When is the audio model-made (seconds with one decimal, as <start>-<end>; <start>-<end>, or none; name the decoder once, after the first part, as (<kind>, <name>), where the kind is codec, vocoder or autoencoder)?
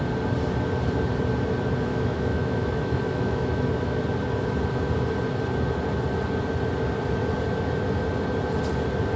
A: 1.9-4.0 (autoencoder, DAC-VAE)